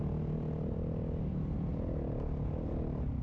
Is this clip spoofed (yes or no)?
no